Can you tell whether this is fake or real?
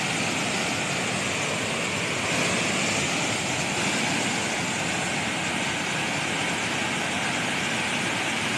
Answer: real